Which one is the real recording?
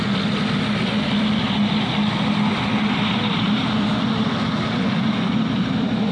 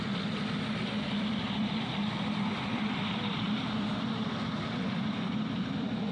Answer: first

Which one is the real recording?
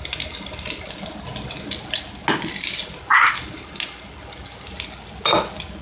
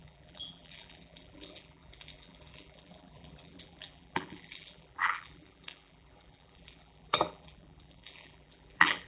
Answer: first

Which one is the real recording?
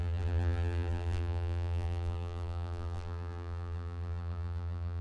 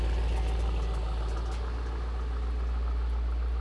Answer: second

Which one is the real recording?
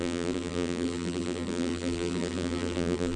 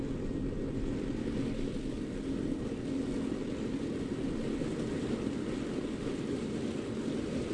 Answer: second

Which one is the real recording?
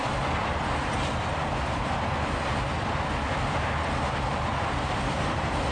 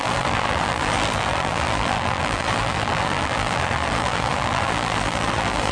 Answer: first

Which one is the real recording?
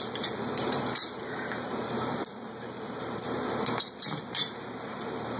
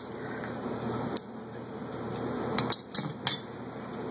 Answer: second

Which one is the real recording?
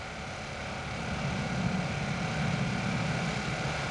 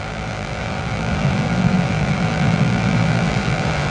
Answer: first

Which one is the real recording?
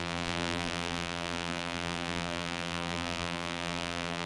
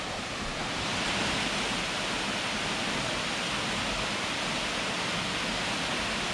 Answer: second